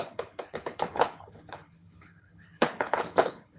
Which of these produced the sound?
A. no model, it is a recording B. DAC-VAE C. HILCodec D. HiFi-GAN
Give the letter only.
C